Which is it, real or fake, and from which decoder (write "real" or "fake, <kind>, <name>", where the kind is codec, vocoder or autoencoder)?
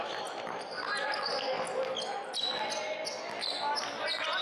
real